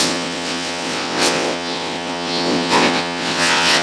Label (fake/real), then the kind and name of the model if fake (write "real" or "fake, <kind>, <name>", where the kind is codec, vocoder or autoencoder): fake, vocoder, WaveNeXt